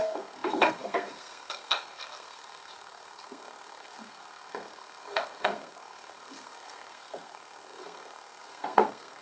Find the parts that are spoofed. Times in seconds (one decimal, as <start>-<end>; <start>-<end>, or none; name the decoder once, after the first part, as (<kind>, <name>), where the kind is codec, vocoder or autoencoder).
0.0-9.2 (codec, SNAC)